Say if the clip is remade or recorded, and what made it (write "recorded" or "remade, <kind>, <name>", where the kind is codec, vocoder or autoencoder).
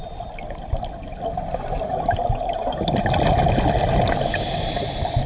recorded